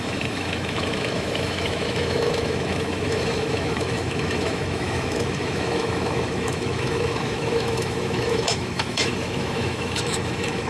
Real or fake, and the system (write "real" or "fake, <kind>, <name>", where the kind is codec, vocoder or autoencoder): fake, autoencoder, DAC-VAE